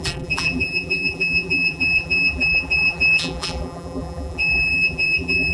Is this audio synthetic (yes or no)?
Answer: yes